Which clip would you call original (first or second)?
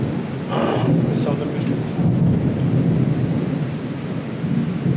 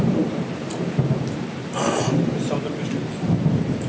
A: first